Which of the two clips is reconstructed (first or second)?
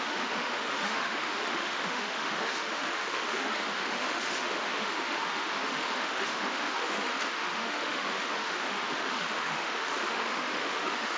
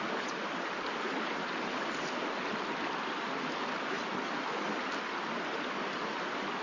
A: first